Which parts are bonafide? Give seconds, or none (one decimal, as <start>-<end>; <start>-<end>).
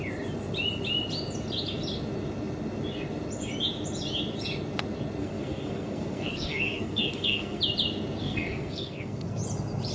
0.0-5.2; 7.6-8.2; 9.4-9.9